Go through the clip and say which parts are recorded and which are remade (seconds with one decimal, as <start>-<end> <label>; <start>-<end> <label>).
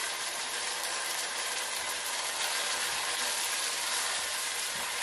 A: 0.0-2.1 remade; 2.1-5.0 recorded